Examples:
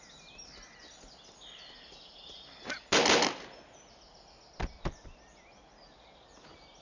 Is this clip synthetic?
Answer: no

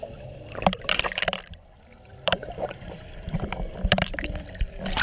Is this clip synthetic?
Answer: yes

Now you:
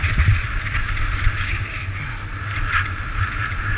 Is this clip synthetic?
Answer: no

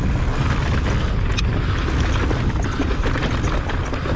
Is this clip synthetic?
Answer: no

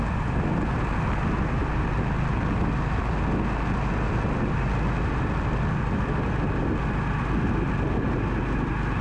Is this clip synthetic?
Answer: no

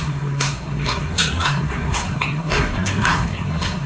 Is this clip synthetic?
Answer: yes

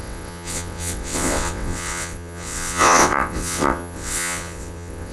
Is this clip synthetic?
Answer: yes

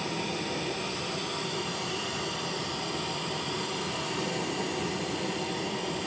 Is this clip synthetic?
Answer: no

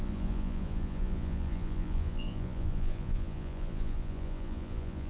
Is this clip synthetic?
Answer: yes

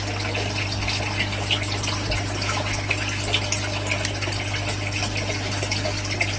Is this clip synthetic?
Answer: no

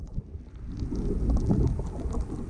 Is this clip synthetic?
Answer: no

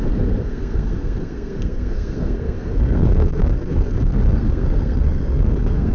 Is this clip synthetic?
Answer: yes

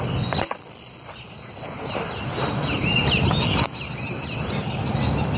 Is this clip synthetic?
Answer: no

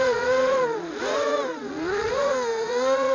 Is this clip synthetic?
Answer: yes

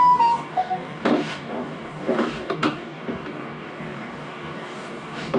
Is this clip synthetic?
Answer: yes